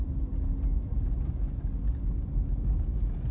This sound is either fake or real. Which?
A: real